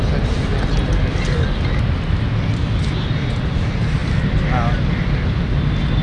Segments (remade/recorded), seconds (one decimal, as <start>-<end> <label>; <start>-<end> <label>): 0.0-6.0 recorded